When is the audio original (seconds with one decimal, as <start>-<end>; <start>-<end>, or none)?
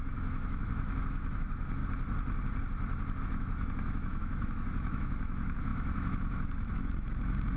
1.8-3.2